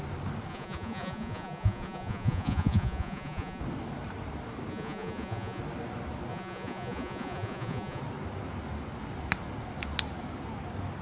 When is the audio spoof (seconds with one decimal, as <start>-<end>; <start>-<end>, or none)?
0.5-3.6; 4.7-5.6; 6.3-8.0